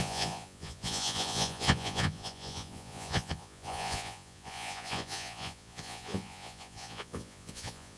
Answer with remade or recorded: remade